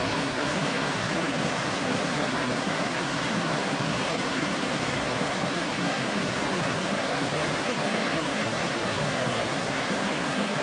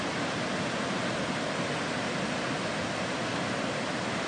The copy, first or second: first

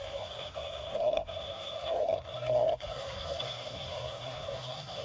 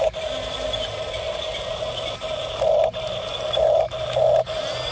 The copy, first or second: first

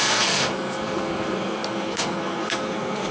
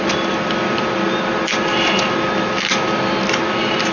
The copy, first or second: first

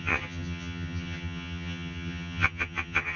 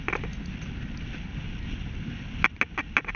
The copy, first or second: first